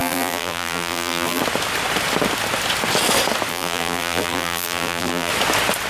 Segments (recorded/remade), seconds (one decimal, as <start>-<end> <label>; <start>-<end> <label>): 0.0-1.4 remade; 1.4-3.5 recorded; 3.5-5.3 remade; 5.3-5.9 recorded